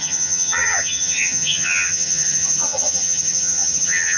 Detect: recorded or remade remade